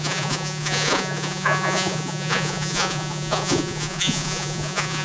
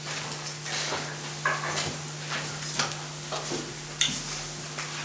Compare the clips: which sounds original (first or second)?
second